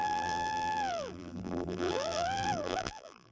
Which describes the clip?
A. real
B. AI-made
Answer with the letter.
B